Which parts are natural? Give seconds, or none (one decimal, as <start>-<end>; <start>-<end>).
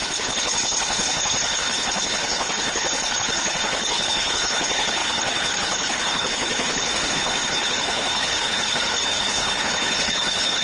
none